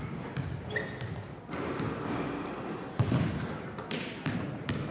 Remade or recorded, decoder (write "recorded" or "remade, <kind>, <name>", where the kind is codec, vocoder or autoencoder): recorded